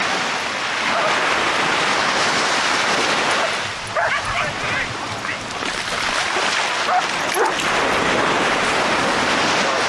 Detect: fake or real real